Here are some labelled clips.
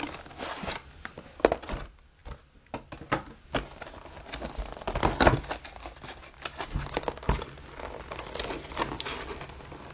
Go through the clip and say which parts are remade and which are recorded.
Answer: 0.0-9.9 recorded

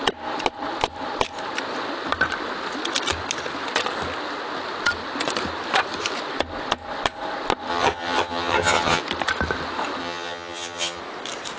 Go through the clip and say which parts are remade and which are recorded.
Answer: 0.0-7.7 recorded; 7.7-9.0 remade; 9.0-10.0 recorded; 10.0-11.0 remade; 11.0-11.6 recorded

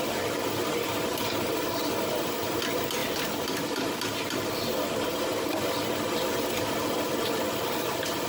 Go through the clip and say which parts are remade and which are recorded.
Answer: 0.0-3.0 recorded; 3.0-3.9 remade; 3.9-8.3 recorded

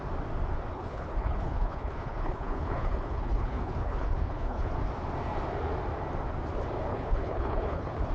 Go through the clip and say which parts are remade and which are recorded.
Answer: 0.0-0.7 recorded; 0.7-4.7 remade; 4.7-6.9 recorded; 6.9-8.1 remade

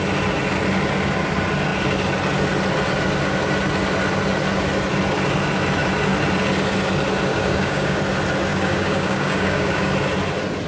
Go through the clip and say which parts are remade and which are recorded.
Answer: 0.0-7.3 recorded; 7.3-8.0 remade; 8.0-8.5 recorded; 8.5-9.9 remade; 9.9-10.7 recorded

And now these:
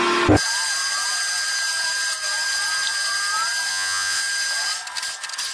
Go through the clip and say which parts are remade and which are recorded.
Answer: 0.0-3.7 recorded; 3.7-4.2 remade; 4.2-5.5 recorded